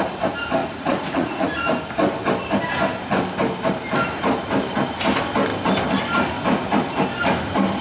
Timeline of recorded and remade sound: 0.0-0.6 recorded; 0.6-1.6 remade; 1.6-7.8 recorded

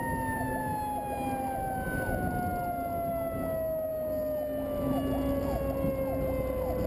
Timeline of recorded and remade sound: 0.0-6.9 recorded

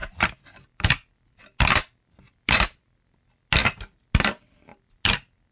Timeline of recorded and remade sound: 0.0-5.5 recorded

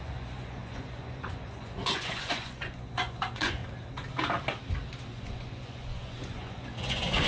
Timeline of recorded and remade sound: 0.0-3.6 remade; 3.6-5.1 recorded; 5.1-7.3 remade